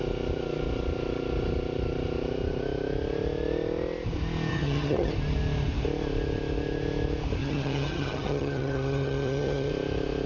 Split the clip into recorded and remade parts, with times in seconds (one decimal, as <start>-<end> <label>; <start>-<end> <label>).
0.0-4.5 recorded; 4.5-5.1 remade; 5.1-7.4 recorded; 7.4-9.7 remade; 9.7-10.3 recorded